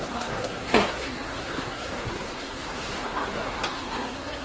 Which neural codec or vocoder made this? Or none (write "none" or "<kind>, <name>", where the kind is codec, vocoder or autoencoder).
codec, SNAC